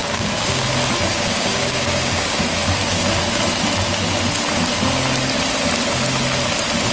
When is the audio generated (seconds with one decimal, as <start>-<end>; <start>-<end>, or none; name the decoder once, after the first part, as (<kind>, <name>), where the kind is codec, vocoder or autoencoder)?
0.0-0.6 (codec, DAC); 1.1-2.4